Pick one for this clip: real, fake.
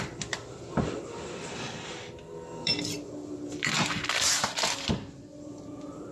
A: fake